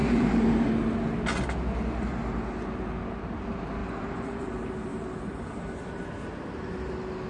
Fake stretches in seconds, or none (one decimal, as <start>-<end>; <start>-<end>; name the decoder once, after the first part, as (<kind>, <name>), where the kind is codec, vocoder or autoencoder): 0.0-0.7 (vocoder, BigVGAN v2); 3.8-4.5; 4.9-6.0